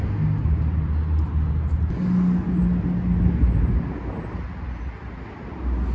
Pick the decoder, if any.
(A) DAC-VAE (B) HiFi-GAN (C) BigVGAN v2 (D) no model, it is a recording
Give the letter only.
D